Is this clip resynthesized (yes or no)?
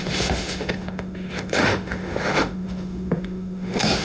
yes